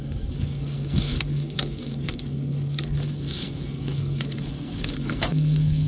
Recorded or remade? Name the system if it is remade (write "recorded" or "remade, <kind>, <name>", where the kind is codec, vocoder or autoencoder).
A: remade, codec, SNAC